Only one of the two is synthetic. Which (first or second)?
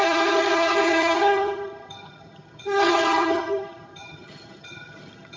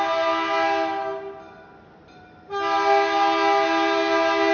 first